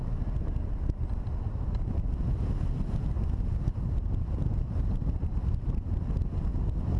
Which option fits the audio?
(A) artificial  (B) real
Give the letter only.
B